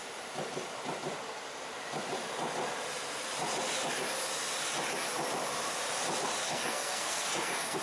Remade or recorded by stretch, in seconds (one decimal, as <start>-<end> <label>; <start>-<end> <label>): 0.0-6.4 recorded; 6.4-7.8 remade